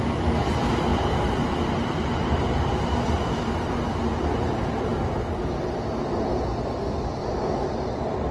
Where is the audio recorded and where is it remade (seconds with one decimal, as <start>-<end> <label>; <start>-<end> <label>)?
0.0-7.2 recorded; 7.2-8.3 remade